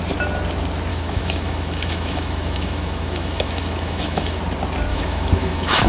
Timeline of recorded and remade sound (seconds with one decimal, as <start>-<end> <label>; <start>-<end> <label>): 0.0-0.9 recorded; 0.9-4.4 remade; 4.4-4.9 recorded; 4.9-5.9 remade